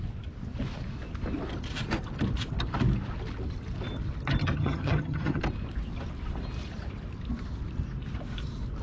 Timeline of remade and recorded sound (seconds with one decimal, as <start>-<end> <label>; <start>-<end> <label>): 0.0-4.4 recorded; 4.4-5.4 remade; 5.4-8.8 recorded